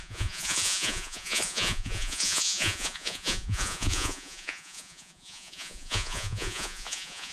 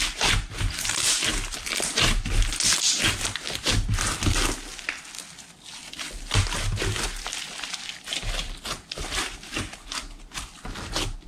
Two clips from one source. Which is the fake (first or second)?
first